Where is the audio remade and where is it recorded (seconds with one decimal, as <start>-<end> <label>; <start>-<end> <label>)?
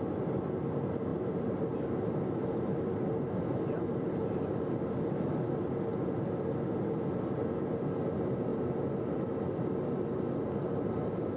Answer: 0.0-11.4 recorded